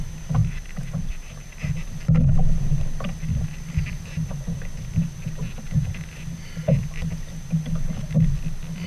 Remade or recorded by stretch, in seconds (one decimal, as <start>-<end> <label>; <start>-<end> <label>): 0.0-0.4 recorded; 0.4-1.6 remade; 1.6-8.9 recorded